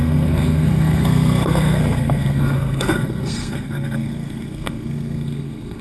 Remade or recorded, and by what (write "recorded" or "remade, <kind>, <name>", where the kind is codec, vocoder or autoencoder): remade, codec, SNAC